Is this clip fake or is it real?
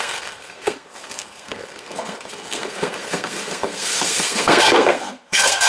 fake